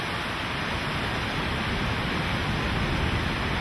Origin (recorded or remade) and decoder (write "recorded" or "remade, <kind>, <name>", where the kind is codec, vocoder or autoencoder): recorded